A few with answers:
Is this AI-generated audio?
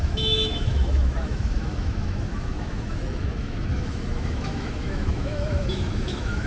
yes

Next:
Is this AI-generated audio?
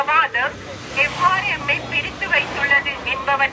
no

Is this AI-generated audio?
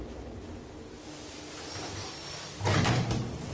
no